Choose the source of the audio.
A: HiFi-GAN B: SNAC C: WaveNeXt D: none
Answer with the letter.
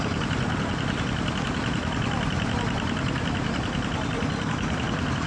D